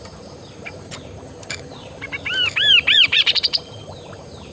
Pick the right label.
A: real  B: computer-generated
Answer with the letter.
B